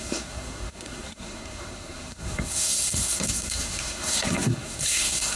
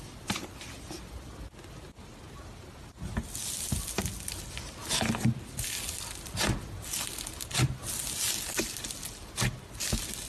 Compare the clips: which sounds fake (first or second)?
first